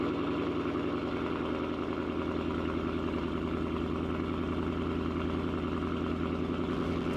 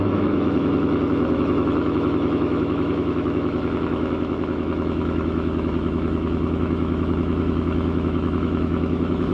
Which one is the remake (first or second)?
second